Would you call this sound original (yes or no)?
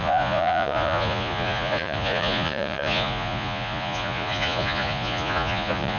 no